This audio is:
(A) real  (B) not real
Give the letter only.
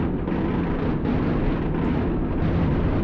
A